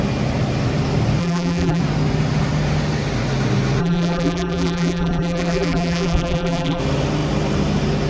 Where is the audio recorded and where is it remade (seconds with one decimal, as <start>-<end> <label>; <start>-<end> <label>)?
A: 0.0-1.2 recorded; 1.2-1.8 remade; 1.8-3.8 recorded; 3.8-6.8 remade; 6.8-8.1 recorded